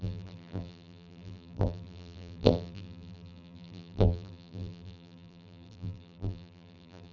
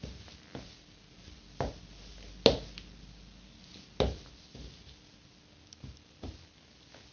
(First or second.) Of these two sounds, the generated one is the first